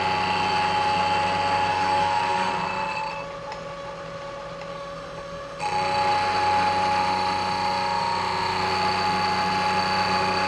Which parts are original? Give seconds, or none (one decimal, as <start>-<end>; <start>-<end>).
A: 0.0-1.7; 2.5-4.7; 5.6-10.5

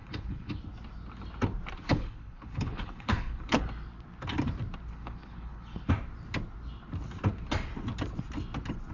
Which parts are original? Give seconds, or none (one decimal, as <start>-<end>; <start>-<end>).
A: 0.6-1.9; 3.6-4.9; 5.9-8.9

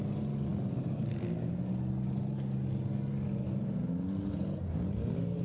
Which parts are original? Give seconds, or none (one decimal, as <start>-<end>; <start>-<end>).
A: 0.0-5.4

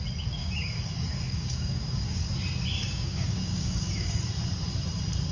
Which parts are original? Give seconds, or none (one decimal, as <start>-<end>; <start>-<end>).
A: 0.0-0.4; 2.2-2.8; 4.2-5.3

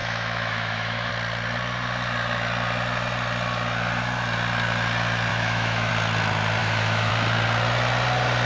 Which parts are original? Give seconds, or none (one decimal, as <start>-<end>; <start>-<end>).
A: 1.1-5.3; 5.9-6.6; 7.1-8.5

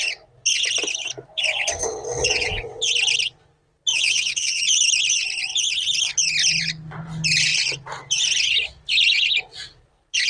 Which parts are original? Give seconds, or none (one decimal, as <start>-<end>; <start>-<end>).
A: 0.0-1.9; 2.9-3.9; 4.6-10.3